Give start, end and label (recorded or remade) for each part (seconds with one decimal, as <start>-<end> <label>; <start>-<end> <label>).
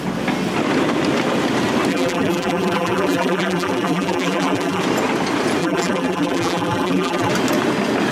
0.0-1.9 recorded; 1.9-4.8 remade; 4.8-5.6 recorded; 5.6-7.3 remade; 7.3-8.1 recorded